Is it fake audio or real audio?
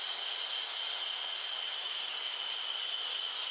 real